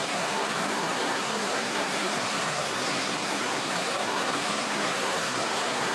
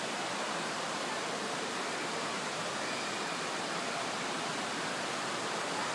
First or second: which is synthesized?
first